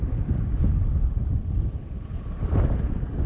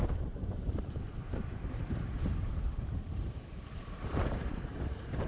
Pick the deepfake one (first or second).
second